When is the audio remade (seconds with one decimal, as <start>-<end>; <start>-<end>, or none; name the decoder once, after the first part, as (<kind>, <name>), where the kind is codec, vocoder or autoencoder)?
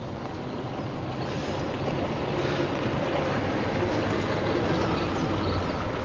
none